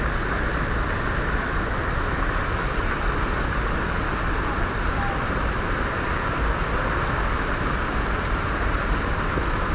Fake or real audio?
real